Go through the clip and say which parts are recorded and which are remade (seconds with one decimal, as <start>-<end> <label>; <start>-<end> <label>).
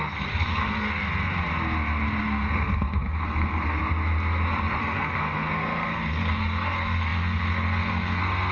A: 0.0-1.0 remade; 1.0-2.2 recorded; 2.2-3.8 remade; 3.8-4.8 recorded; 4.8-8.5 remade